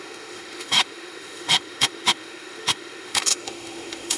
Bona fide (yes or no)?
no